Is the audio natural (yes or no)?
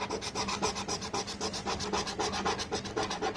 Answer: yes